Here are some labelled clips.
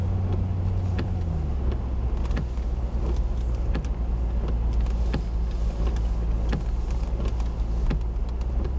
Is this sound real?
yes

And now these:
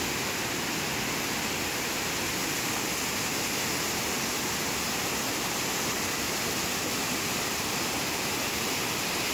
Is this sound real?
yes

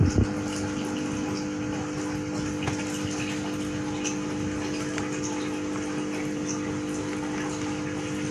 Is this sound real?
yes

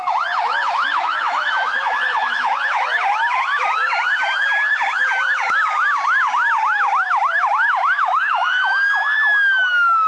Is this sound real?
no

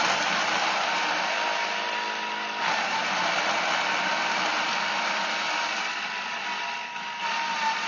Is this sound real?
yes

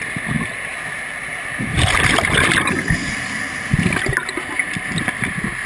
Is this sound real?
yes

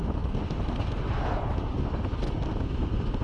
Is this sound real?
yes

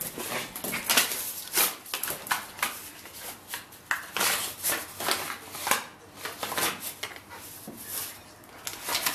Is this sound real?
yes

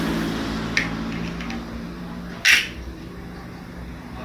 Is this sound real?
yes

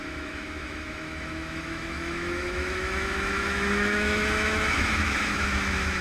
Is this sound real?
no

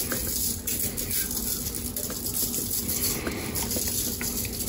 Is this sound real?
yes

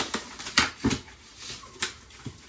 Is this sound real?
yes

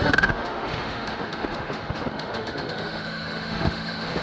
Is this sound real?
no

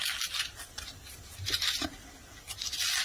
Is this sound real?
yes